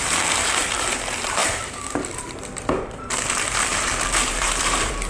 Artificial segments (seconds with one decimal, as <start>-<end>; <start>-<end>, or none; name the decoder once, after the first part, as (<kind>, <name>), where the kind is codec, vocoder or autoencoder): 0.0-5.1 (vocoder, BigVGAN v2)